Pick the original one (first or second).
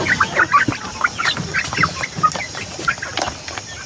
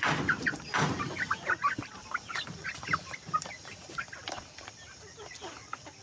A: first